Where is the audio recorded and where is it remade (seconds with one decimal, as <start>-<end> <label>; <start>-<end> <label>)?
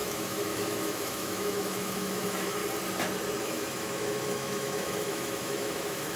0.0-2.6 remade; 2.6-3.4 recorded; 3.4-6.2 remade